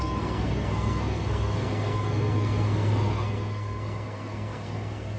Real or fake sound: fake